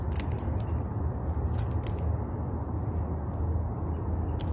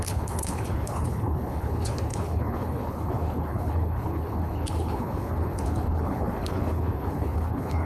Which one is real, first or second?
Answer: first